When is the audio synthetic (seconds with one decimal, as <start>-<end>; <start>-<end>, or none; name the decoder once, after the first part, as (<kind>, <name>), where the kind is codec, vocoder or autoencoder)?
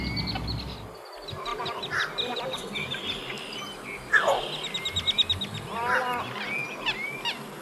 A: none